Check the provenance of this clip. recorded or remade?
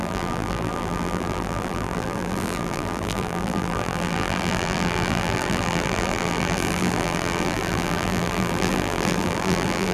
remade